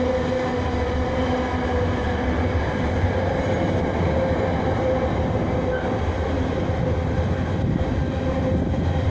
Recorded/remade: recorded